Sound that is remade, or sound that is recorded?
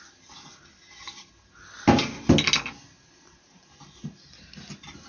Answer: recorded